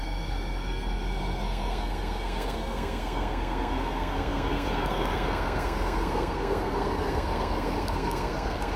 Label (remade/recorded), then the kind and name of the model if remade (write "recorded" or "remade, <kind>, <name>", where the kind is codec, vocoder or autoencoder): remade, codec, SNAC